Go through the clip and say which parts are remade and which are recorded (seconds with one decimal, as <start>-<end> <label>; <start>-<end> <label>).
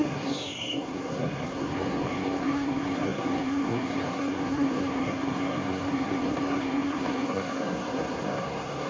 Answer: 0.0-8.9 remade